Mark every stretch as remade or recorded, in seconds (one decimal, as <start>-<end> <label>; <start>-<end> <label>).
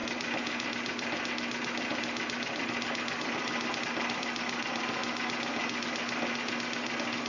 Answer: 0.0-7.3 recorded